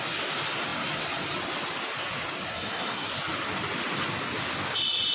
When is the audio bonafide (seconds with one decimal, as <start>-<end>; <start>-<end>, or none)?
0.0-2.5; 3.1-5.1

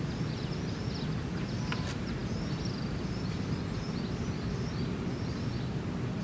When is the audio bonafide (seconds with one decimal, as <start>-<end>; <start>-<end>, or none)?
0.0-6.2

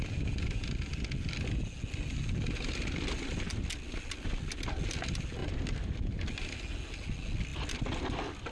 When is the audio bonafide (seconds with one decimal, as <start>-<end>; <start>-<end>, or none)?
0.0-8.5

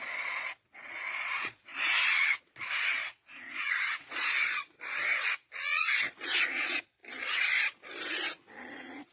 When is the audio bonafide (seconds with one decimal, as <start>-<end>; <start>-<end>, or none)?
7.0-8.7

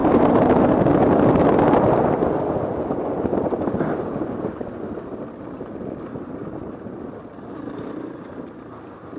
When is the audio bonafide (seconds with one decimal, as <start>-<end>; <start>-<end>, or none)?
0.6-9.2